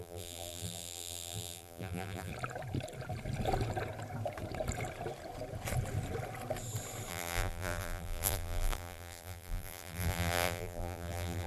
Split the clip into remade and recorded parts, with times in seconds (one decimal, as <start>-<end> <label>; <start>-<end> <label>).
0.0-2.3 remade; 2.3-7.1 recorded; 7.1-11.5 remade